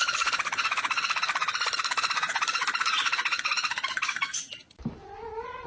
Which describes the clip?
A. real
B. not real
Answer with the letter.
A